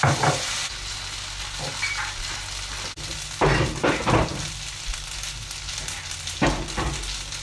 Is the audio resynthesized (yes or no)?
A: no